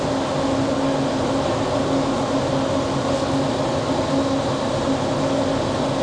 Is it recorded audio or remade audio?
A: recorded